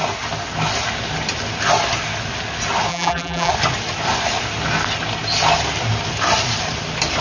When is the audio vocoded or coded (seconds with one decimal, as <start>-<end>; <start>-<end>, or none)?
2.9-3.5